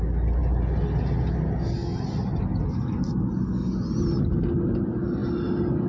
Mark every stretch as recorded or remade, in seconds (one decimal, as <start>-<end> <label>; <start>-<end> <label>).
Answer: 0.0-5.9 recorded